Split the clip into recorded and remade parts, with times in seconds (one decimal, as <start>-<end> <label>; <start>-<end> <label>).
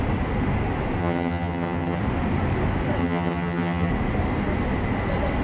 0.0-1.0 recorded; 1.0-2.0 remade; 2.0-3.0 recorded; 3.0-3.9 remade; 3.9-5.4 recorded